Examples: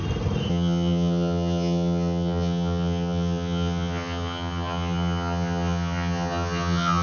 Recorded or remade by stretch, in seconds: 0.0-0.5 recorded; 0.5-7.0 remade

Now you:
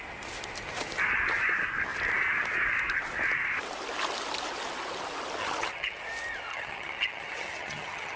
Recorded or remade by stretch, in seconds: 0.0-5.4 recorded; 5.4-6.0 remade; 6.0-6.5 recorded; 6.5-8.2 remade

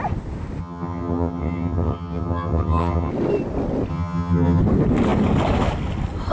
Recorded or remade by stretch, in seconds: 0.0-0.6 recorded; 0.6-3.1 remade; 3.1-3.9 recorded; 3.9-4.6 remade; 4.6-6.3 recorded